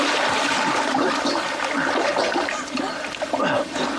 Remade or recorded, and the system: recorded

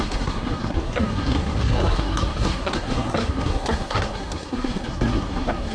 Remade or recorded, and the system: remade, codec, SNAC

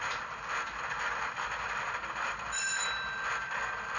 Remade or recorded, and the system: recorded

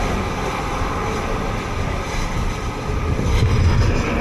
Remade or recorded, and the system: recorded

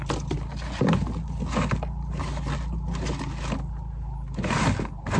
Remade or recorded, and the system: recorded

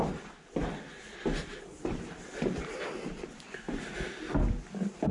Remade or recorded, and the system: recorded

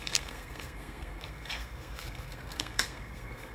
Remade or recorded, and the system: remade, codec, SNAC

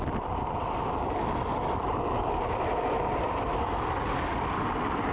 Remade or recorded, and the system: recorded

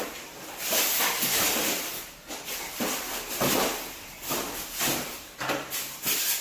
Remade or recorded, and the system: recorded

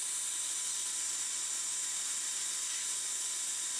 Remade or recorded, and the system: recorded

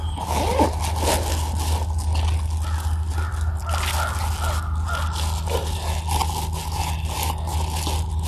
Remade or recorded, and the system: recorded